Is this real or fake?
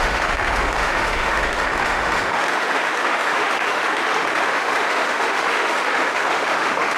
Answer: fake